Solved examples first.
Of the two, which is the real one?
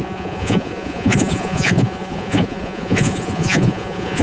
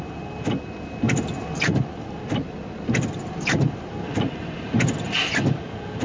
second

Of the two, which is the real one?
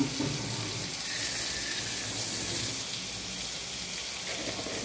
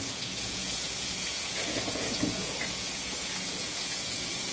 first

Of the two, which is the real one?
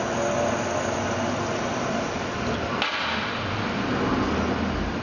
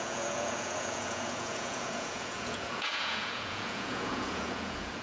first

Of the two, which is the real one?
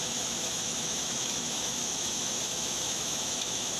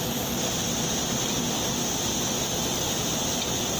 second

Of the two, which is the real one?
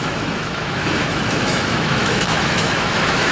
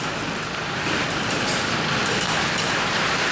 second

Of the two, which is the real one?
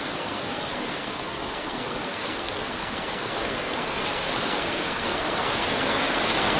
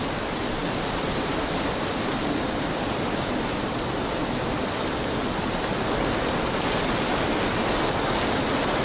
second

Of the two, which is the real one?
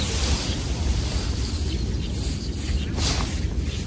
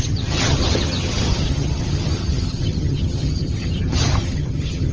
first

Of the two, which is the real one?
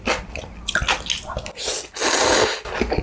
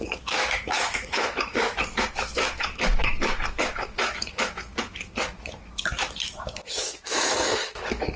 first